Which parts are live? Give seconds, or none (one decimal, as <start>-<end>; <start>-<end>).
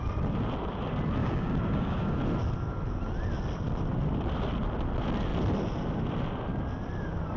0.0-1.2; 2.2-7.4